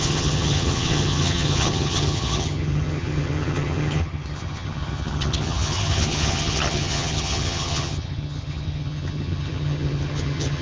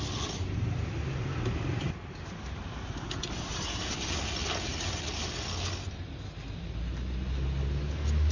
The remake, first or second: first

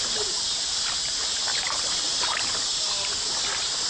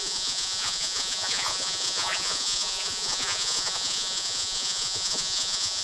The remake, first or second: second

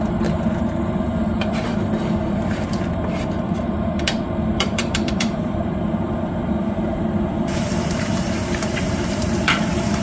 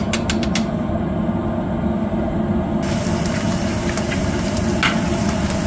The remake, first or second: first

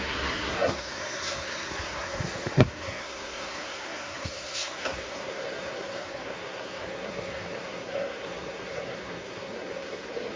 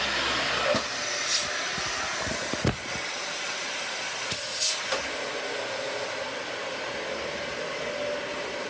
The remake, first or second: first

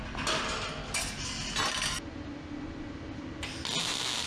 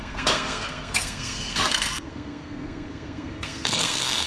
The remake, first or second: second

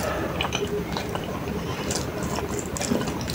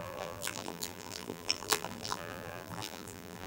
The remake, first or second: second